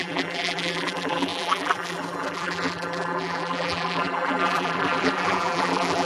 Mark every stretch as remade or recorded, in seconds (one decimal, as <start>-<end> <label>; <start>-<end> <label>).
0.0-6.1 remade